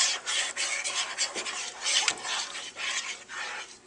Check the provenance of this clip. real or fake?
real